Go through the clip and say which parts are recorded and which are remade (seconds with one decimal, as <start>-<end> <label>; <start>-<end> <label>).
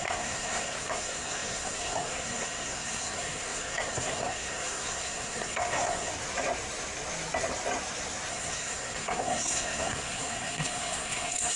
0.0-6.1 remade; 6.1-8.3 recorded; 8.3-11.6 remade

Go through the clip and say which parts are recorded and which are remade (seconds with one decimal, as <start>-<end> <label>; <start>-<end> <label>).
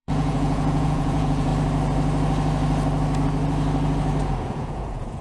0.0-1.5 remade; 1.5-4.4 recorded; 4.4-5.2 remade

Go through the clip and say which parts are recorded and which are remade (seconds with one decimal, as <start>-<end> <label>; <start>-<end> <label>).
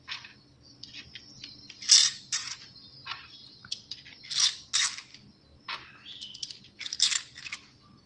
0.0-2.0 recorded; 2.0-2.6 remade; 2.6-8.1 recorded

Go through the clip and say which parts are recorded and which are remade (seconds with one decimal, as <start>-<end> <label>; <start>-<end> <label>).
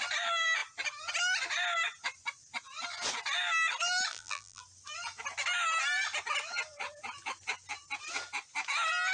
0.0-4.1 recorded; 4.1-4.6 remade; 4.6-9.1 recorded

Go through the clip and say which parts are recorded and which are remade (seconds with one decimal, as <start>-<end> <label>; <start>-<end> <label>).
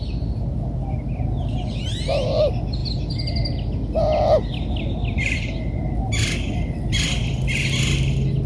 0.0-8.5 recorded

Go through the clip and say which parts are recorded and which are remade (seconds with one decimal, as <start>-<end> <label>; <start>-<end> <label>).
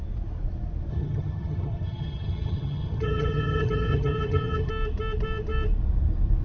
0.0-0.9 recorded; 0.9-4.7 remade; 4.7-6.4 recorded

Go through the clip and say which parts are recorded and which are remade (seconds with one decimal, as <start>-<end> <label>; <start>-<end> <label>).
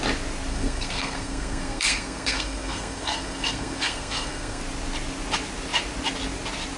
0.0-0.5 recorded; 0.5-4.6 remade; 4.6-6.8 recorded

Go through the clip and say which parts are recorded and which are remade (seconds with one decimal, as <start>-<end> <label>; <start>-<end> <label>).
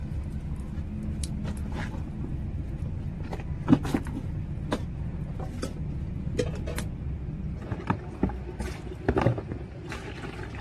0.0-10.6 recorded